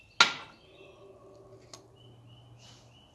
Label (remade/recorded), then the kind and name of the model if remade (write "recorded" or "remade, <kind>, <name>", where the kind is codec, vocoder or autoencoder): recorded